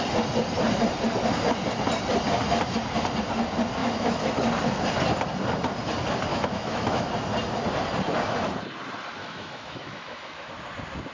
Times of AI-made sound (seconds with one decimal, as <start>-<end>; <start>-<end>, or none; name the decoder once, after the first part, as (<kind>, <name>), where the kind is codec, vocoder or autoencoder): 3.8-4.3 (autoencoder, DAC-VAE); 6.3-7.1; 9.2-10.5